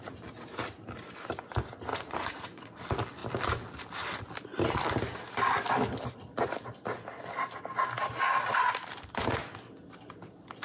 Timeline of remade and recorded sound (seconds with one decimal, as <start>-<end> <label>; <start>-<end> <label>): 0.0-1.9 recorded; 1.9-2.8 remade; 2.8-10.6 recorded